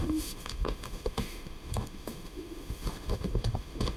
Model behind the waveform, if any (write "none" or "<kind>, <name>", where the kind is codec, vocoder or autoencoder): autoencoder, DAC-VAE